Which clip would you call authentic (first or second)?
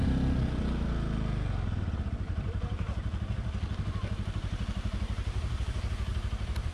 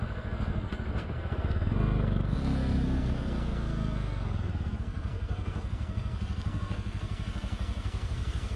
first